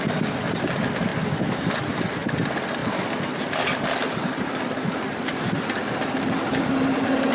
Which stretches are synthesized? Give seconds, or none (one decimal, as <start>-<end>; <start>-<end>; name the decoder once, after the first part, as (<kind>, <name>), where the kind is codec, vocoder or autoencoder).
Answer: none